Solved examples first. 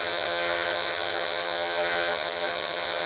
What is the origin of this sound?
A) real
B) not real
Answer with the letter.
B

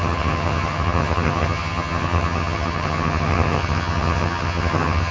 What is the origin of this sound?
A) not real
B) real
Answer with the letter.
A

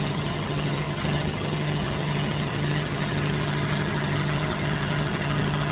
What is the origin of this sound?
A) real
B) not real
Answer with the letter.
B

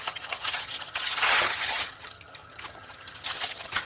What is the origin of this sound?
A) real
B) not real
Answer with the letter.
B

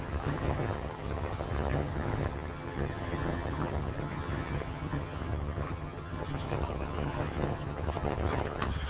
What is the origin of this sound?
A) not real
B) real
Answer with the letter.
A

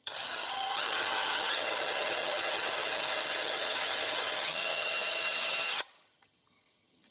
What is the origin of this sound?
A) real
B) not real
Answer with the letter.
B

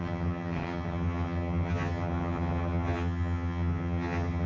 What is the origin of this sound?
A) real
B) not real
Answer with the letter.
B